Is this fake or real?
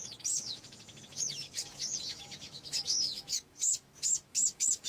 fake